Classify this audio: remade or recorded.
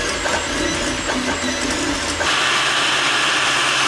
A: recorded